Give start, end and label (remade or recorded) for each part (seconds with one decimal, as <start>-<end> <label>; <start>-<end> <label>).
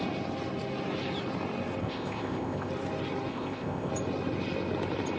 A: 0.0-1.8 recorded; 1.8-2.7 remade; 2.7-3.3 recorded; 3.3-3.9 remade; 3.9-5.2 recorded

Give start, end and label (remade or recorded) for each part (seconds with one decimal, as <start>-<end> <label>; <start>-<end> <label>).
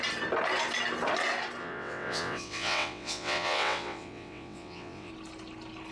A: 0.0-1.6 recorded; 1.6-5.1 remade; 5.1-5.9 recorded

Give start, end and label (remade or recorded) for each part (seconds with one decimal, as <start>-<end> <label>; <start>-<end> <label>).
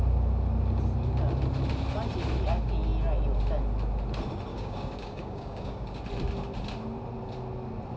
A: 0.0-4.5 recorded; 4.5-6.0 remade; 6.0-8.0 recorded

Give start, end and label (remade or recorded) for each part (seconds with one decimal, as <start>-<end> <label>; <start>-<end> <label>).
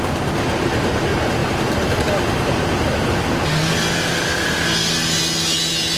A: 0.0-6.0 recorded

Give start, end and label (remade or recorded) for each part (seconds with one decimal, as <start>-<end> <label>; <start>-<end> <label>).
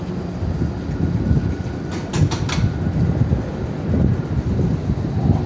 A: 0.0-5.5 recorded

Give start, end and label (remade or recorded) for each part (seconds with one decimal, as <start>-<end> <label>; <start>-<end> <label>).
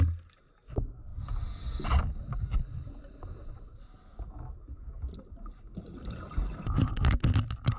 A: 0.0-7.8 recorded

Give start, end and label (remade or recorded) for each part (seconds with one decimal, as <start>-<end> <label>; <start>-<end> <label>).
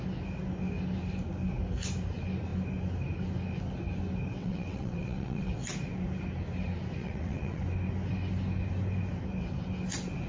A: 0.0-4.4 recorded; 4.4-5.5 remade; 5.5-7.0 recorded; 7.0-7.6 remade; 7.6-10.3 recorded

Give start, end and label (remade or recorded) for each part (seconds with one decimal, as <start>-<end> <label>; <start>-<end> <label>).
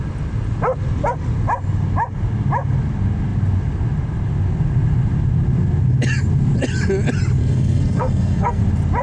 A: 0.0-7.4 recorded; 7.4-8.6 remade; 8.6-9.0 recorded